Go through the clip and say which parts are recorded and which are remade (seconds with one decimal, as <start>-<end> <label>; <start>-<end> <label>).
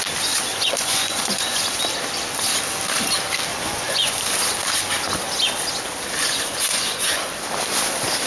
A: 0.0-0.5 recorded; 0.5-1.6 remade; 1.6-3.5 recorded; 3.5-4.2 remade; 4.2-6.2 recorded; 6.2-7.2 remade; 7.2-8.3 recorded